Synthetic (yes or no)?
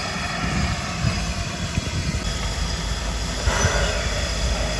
no